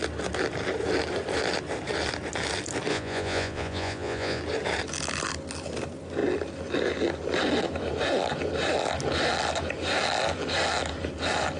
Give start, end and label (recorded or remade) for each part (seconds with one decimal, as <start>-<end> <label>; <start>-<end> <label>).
0.0-2.9 recorded; 2.9-4.4 remade; 4.4-11.6 recorded